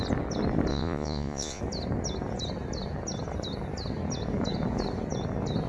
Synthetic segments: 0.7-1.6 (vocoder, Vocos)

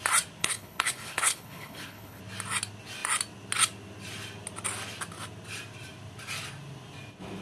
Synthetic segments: 0.4-2.2 (codec, HILCodec)

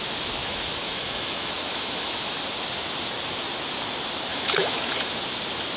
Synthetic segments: 0.4-2.4 (autoencoder, DAC-VAE); 4.3-5.2